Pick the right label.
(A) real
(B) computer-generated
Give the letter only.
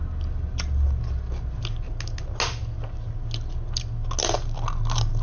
A